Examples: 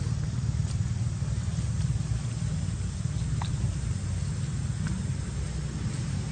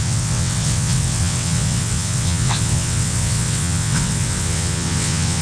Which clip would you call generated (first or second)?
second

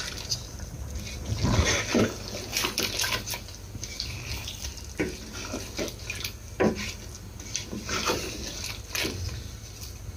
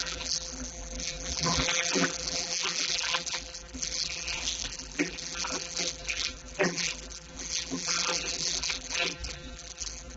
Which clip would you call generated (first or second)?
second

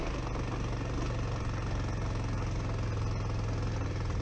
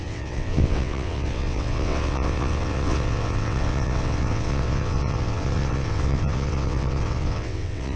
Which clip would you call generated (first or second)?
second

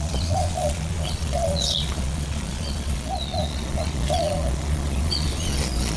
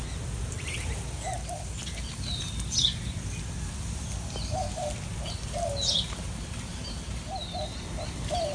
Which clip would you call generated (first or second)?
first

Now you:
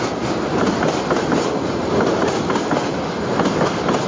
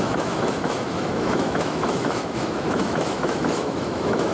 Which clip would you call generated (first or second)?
second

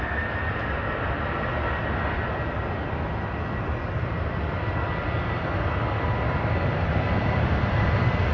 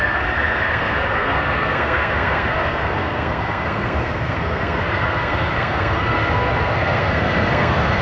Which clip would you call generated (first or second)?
second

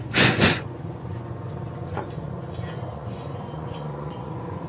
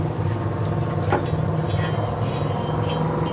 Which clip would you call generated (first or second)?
first